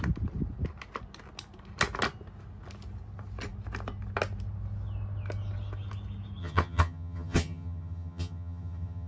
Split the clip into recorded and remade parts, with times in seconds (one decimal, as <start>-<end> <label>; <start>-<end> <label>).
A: 0.0-6.4 recorded; 6.4-9.1 remade